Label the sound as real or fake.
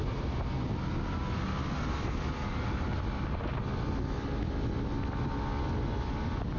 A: real